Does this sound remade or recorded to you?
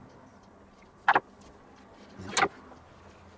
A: recorded